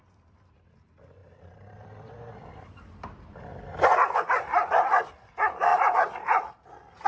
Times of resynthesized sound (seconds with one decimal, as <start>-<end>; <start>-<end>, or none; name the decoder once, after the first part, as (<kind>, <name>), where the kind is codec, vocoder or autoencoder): 0.0-5.7 (vocoder, BigVGAN v2)